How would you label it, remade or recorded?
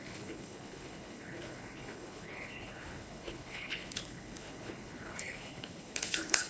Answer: remade